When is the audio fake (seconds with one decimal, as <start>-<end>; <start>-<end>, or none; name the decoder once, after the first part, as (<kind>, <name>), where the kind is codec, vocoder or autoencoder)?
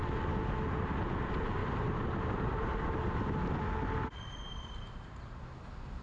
1.6-3.1 (vocoder, BigVGAN v2)